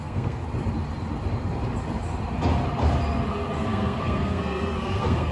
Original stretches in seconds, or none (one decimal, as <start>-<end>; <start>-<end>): 0.4-3.6